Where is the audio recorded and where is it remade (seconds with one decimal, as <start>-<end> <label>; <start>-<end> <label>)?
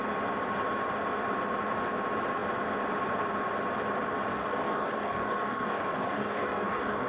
0.0-4.3 recorded; 4.3-7.1 remade